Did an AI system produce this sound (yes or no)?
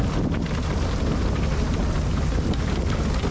no